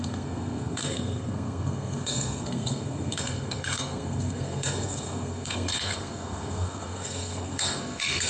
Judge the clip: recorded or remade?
remade